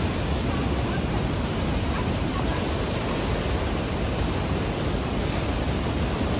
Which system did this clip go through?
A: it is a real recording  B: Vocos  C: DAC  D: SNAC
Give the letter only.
A